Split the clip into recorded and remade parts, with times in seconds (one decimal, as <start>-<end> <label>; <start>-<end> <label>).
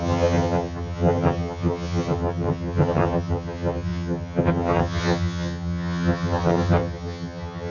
0.0-7.7 remade